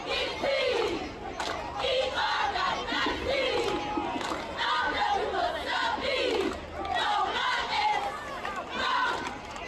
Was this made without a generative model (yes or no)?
yes